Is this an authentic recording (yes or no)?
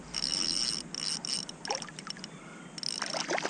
yes